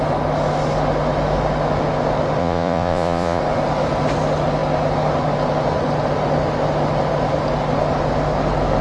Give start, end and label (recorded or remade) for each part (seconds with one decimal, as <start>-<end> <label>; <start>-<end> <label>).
0.0-2.4 recorded; 2.4-3.4 remade; 3.4-8.8 recorded